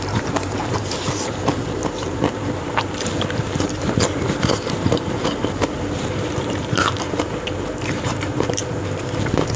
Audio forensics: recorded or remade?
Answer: remade